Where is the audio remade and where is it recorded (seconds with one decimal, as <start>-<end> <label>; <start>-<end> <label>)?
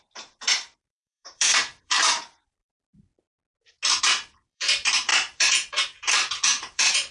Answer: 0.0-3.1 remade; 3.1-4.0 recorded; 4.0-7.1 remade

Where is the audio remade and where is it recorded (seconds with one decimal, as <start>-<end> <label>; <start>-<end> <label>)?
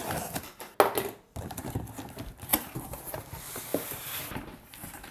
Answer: 0.0-0.7 remade; 0.7-2.5 recorded; 2.5-3.0 remade; 3.0-3.7 recorded; 3.7-4.2 remade; 4.2-5.1 recorded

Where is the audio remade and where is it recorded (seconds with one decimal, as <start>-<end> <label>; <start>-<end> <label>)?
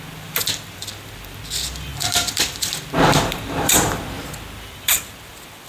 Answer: 0.0-5.7 remade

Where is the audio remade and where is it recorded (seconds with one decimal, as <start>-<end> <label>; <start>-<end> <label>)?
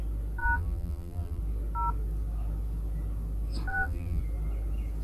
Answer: 0.0-0.4 recorded; 0.4-1.4 remade; 1.4-3.7 recorded; 3.7-4.2 remade; 4.2-5.0 recorded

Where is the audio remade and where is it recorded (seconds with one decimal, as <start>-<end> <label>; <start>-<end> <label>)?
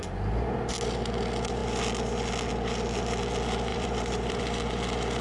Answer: 0.0-3.7 recorded; 3.7-4.7 remade; 4.7-5.2 recorded